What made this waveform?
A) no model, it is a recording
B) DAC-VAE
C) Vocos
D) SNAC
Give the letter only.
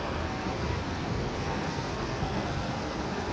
D